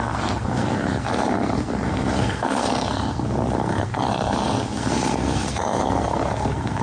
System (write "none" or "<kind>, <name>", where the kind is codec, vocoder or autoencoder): codec, SNAC